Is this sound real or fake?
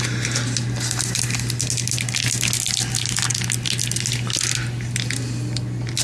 real